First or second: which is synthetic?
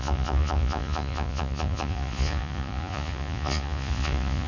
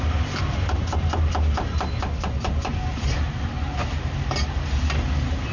first